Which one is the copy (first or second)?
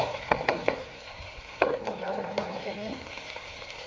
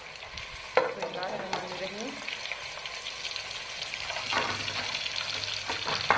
first